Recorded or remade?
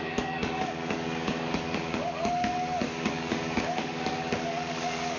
remade